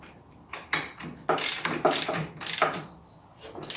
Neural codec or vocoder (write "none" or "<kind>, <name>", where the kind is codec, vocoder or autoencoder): none